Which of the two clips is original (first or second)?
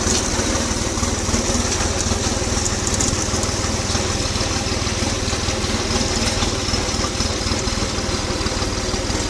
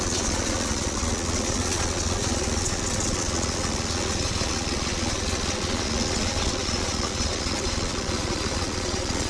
first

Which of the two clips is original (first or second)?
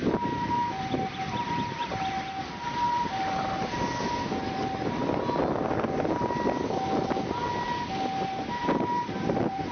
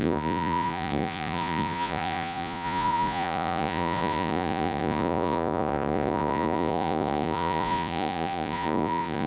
first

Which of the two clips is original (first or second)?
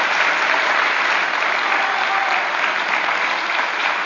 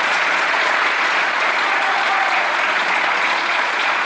first